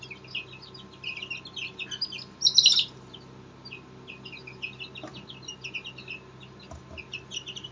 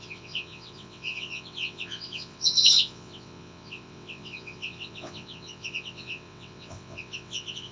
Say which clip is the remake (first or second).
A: second